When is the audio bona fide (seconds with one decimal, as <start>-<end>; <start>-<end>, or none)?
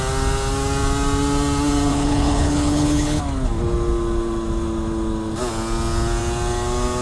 0.0-1.9; 3.2-7.0